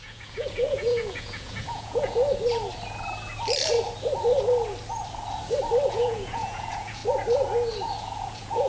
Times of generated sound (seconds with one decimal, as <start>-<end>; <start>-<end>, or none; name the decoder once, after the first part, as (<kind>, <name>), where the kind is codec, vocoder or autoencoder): 0.0-2.2 (vocoder, Vocos); 5.9-7.0; 8.0-8.7